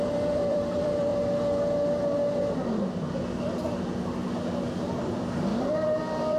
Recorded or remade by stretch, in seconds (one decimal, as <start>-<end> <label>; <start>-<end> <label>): 0.0-1.1 remade; 1.1-4.9 recorded; 4.9-5.5 remade; 5.5-6.0 recorded; 6.0-6.4 remade